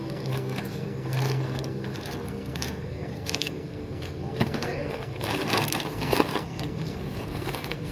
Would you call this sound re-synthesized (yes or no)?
yes